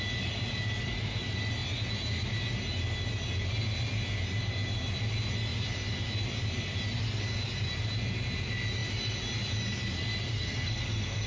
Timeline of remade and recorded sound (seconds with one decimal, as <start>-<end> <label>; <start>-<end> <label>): 0.0-10.3 recorded; 10.3-11.3 remade